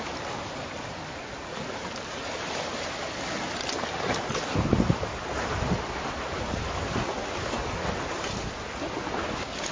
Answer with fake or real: real